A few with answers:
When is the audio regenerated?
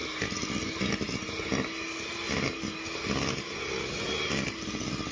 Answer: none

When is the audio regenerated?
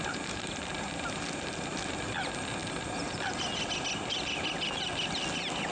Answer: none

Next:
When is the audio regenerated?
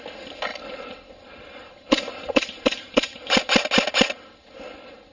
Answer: 0.5-3.4